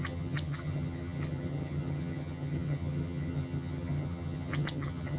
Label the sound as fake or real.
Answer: fake